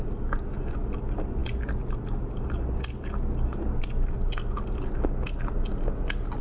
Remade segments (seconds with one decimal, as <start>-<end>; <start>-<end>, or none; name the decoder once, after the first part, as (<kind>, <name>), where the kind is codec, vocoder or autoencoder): none